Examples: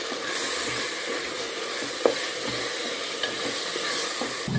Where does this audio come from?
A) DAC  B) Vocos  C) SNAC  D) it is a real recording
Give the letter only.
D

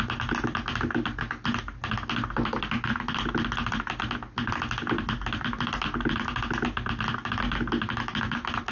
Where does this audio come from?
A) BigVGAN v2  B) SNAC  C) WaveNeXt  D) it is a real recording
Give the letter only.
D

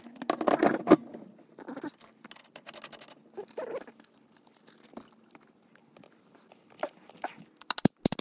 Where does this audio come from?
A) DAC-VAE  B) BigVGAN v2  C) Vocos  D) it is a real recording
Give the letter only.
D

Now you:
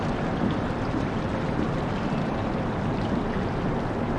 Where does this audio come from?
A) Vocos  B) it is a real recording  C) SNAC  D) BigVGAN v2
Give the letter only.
B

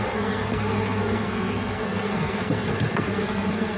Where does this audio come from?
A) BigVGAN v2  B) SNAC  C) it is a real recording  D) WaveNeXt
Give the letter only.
B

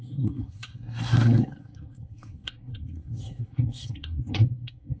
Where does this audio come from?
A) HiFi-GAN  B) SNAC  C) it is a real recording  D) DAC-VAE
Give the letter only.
B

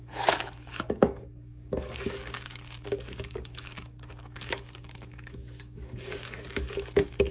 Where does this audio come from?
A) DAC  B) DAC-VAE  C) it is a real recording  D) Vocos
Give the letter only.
A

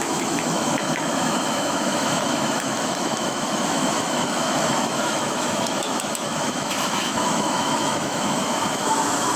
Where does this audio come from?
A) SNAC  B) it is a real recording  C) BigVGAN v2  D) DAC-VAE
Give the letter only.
D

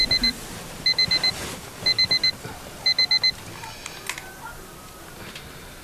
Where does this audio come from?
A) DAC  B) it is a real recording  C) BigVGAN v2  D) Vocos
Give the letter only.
B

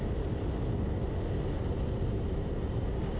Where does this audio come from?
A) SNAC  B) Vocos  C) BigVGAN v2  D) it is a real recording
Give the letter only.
D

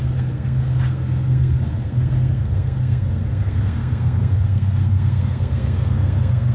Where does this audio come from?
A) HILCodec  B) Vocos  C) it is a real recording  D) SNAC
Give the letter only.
D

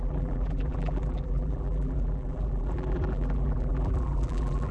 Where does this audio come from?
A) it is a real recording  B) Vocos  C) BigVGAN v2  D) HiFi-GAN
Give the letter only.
C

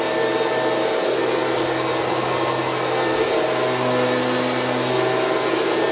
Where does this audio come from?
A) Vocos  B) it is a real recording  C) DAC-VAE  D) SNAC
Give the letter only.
B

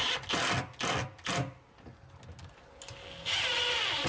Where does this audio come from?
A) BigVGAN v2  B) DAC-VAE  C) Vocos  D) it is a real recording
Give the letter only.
D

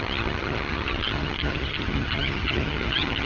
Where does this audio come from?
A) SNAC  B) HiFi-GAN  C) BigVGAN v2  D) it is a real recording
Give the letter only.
B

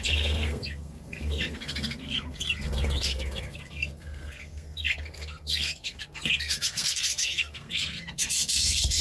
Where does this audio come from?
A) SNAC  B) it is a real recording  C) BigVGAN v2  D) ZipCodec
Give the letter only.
A